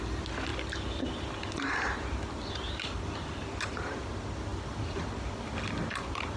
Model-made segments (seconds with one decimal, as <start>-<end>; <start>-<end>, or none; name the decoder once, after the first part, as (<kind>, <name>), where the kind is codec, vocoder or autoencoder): none

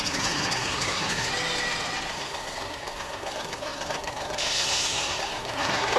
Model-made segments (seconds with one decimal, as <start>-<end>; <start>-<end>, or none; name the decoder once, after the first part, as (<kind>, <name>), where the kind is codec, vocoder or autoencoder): 0.0-1.3 (codec, SNAC); 2.1-6.0

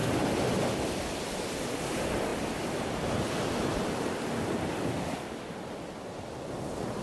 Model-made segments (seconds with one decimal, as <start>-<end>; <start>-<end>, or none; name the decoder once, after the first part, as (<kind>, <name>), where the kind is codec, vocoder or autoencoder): none

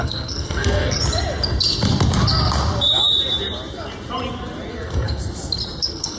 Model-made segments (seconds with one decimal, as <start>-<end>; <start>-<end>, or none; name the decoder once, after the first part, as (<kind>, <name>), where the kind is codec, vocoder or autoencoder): 0.0-1.0 (codec, SNAC); 4.7-5.2; 5.8-6.2

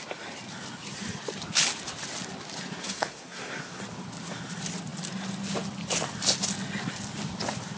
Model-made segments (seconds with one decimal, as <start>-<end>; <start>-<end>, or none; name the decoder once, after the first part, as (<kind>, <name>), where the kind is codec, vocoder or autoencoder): 2.8-3.8 (codec, SNAC)

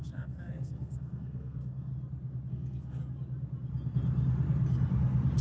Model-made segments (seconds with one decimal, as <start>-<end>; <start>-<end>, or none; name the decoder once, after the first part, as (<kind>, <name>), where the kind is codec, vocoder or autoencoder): 0.0-1.9 (codec, SNAC); 2.5-3.0

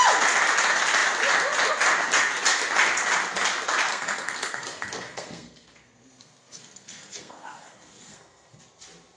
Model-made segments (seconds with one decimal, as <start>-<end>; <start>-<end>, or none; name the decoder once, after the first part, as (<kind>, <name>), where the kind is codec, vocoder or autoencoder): 3.9-8.6 (codec, SNAC)